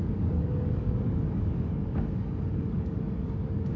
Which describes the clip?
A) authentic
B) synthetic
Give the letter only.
B